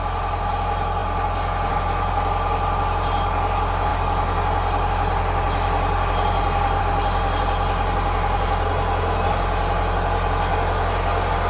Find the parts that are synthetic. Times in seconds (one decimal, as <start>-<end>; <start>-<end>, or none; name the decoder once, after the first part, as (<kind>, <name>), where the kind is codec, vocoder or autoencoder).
none